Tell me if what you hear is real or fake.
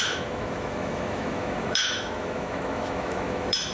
fake